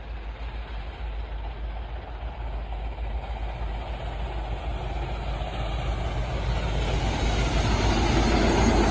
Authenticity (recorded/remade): recorded